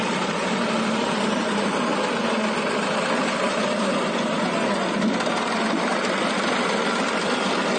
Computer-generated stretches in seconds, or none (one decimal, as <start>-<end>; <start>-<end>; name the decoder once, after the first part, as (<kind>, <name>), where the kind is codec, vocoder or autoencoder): 0.0-1.9 (vocoder, BigVGAN v2); 5.8-7.8